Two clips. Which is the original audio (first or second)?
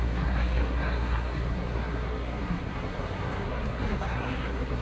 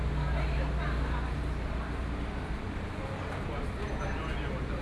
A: second